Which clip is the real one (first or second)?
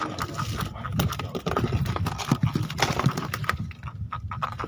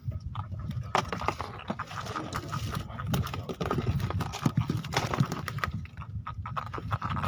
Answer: first